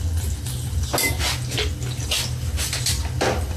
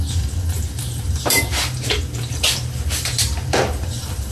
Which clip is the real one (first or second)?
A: first